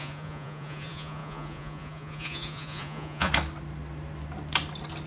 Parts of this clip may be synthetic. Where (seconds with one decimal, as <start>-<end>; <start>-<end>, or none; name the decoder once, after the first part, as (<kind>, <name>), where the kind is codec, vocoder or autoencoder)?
0.0-3.3 (vocoder, Vocos)